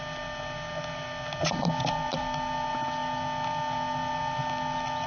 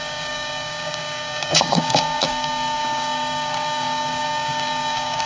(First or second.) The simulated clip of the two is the second